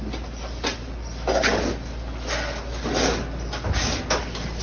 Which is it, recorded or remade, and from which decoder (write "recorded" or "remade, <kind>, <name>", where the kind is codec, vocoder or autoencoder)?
recorded